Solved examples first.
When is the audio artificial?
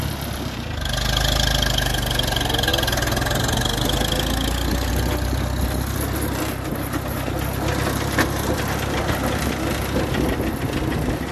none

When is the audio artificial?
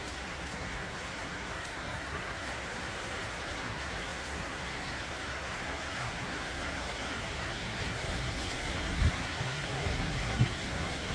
0.0-11.1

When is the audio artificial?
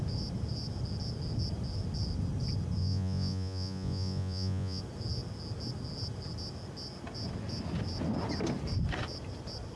2.8-4.8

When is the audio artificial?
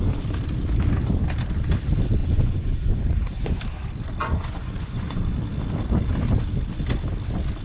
2.2-3.6; 4.2-5.2